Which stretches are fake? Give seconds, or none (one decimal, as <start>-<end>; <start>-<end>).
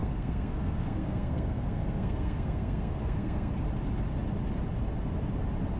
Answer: 0.0-3.5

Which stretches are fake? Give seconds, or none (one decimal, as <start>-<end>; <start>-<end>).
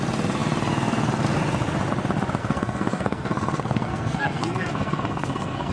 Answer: 2.4-5.7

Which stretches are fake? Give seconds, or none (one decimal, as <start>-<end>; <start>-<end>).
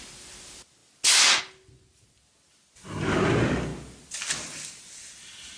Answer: none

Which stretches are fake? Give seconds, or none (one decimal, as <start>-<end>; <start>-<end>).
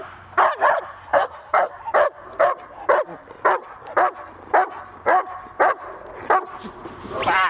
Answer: 1.1-1.7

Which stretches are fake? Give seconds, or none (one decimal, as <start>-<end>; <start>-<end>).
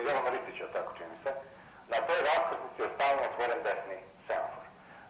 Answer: none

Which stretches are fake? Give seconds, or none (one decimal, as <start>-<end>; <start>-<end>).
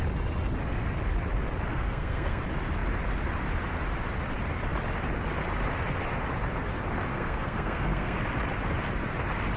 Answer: 1.7-2.4; 7.1-8.2